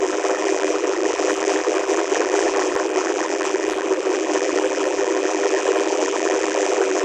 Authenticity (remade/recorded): remade